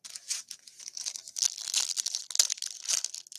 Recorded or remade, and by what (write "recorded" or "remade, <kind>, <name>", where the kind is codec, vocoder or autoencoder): recorded